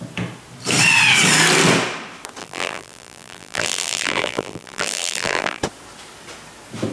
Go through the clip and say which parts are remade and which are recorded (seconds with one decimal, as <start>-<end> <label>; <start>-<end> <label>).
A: 0.0-2.4 recorded; 2.4-5.6 remade; 5.6-6.9 recorded